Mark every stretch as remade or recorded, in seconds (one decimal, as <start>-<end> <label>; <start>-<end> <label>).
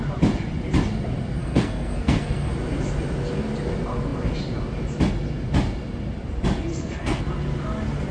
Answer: 0.0-1.4 recorded; 1.4-2.5 remade; 2.5-6.7 recorded; 6.7-7.2 remade; 7.2-8.1 recorded